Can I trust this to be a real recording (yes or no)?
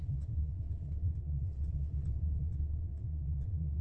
no